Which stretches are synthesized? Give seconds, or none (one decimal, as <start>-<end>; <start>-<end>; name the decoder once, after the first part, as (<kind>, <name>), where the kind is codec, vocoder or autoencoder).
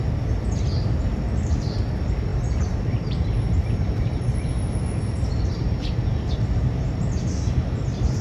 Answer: 0.0-8.2 (vocoder, BigVGAN v2)